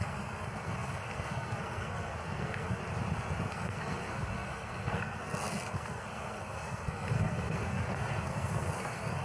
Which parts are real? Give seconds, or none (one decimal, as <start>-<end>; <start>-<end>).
2.8-3.4